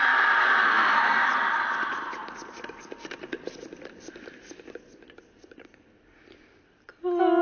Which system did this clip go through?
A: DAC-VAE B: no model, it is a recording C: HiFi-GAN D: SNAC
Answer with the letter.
B